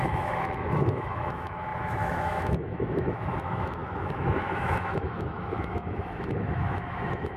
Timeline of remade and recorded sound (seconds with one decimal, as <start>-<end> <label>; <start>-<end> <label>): 0.0-7.4 remade